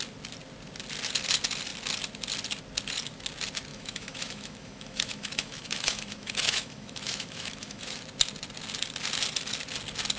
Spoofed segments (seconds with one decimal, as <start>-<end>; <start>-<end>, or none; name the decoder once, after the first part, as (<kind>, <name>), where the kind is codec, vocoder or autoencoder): 3.7-8.0 (autoencoder, DAC-VAE)